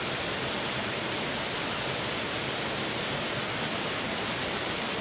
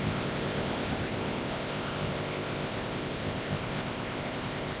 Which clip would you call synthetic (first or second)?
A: second